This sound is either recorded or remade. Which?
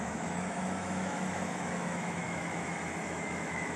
remade